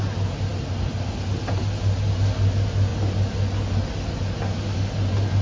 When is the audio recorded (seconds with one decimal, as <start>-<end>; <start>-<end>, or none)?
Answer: 0.0-5.4